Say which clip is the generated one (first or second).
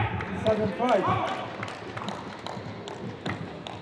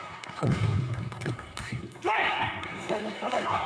second